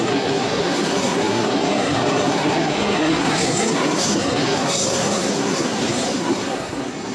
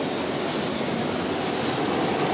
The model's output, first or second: first